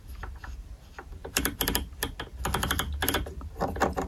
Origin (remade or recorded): remade